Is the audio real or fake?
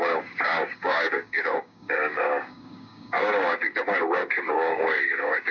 fake